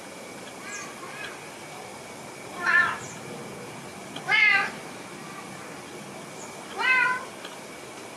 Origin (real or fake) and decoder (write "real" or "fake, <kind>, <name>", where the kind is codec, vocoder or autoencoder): real